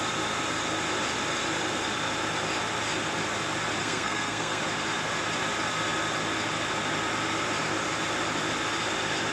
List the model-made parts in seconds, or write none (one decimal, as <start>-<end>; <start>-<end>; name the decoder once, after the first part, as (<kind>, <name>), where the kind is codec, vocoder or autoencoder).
3.8-4.6 (codec, SNAC)